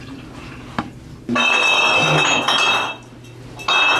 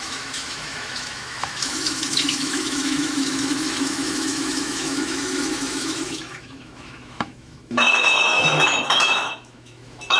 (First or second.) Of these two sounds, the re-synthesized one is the second